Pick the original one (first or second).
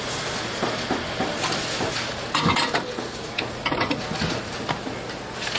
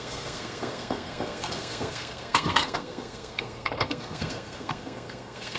first